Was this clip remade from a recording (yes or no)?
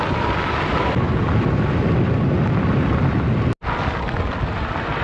no